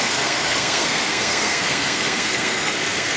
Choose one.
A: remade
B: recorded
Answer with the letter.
A